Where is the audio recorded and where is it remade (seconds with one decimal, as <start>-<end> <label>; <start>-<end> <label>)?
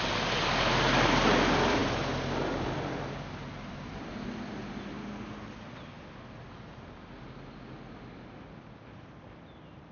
0.0-9.9 recorded